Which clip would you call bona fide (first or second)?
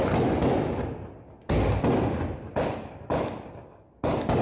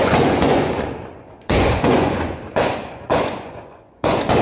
first